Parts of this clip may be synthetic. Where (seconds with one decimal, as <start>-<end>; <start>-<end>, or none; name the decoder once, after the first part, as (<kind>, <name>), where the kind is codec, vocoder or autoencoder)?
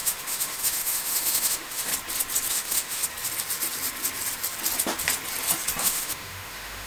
0.0-1.9 (autoencoder, DAC-VAE); 2.5-3.0; 5.8-6.9